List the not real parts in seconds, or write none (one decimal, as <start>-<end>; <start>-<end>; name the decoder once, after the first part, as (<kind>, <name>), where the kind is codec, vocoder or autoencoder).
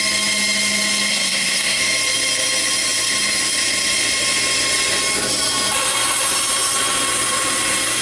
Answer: 1.1-1.8 (codec, SNAC)